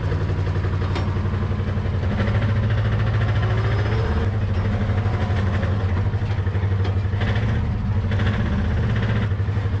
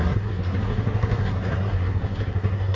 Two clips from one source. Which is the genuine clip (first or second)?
first